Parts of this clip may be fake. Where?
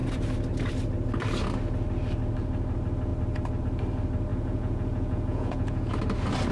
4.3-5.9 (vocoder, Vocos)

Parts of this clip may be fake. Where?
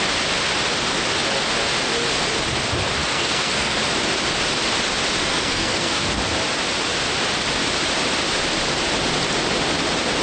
3.0-3.8 (codec, SNAC); 5.3-6.2